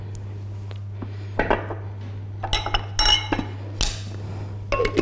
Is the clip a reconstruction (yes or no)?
no